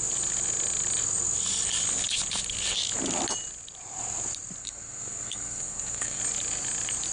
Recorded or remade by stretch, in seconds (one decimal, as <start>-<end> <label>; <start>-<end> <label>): 0.0-4.6 recorded; 4.6-6.2 remade; 6.2-7.1 recorded